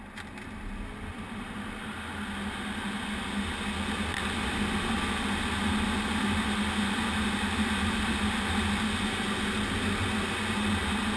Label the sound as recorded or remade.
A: recorded